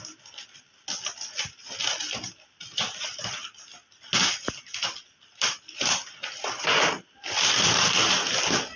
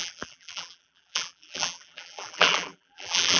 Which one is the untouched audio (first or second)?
first